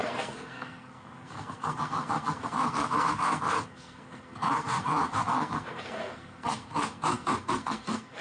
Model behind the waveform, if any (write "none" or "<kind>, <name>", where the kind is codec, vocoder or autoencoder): codec, SNAC